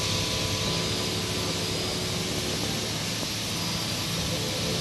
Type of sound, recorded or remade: recorded